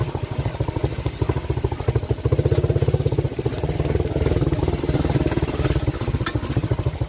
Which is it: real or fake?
real